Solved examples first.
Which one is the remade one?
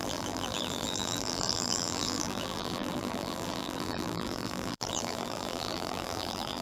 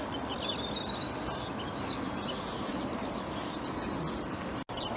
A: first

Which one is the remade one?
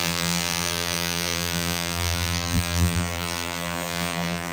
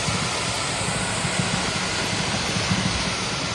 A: first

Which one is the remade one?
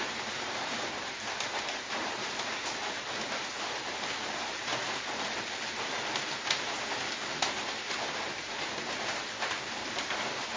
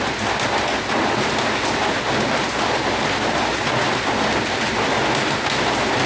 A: first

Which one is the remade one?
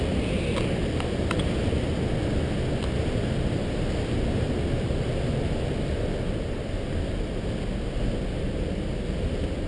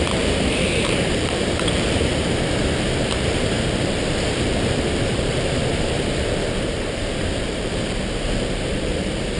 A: second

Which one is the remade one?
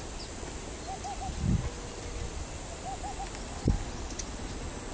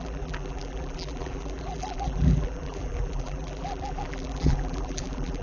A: second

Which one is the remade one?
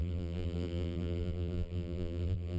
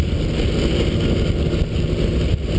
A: first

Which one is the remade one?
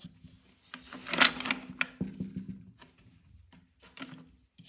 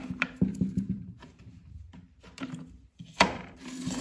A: second